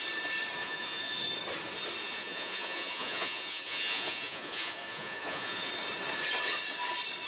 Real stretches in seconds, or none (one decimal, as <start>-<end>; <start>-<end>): 0.0-0.6; 1.2-2.0; 5.7-7.3